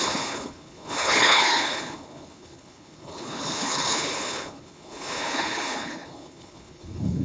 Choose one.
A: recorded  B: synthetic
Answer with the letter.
B